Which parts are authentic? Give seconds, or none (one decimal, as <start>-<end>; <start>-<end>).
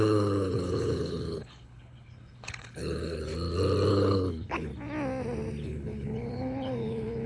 3.3-3.9; 4.7-5.6